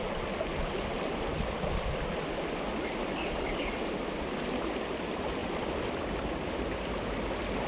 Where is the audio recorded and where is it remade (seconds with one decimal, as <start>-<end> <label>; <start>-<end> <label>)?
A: 0.0-7.7 recorded